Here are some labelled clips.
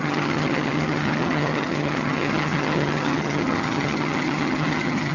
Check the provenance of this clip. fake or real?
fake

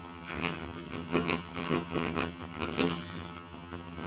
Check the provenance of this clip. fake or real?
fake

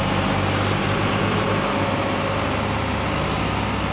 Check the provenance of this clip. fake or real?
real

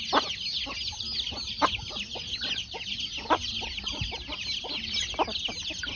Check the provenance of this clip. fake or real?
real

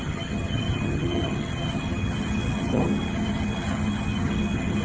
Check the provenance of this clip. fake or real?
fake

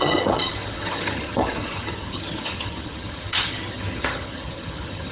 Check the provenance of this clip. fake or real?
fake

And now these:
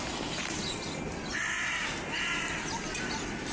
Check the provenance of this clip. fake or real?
real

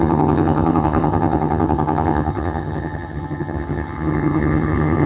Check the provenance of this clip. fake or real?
fake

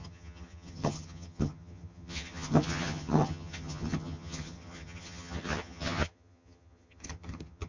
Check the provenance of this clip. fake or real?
fake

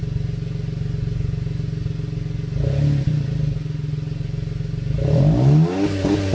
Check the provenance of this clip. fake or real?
real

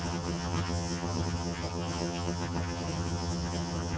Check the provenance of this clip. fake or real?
fake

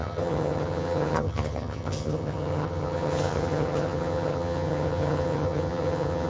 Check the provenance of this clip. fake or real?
fake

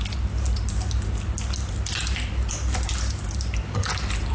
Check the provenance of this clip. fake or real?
real